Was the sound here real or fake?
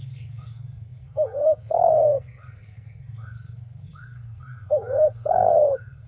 fake